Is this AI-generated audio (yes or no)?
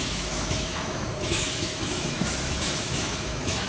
yes